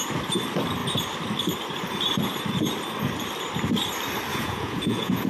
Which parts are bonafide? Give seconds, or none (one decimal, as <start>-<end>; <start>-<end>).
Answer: 0.0-4.3